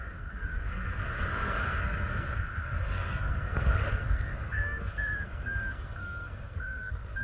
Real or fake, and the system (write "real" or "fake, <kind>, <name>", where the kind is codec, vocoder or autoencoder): fake, codec, SNAC